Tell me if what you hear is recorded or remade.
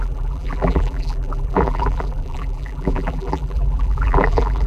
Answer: remade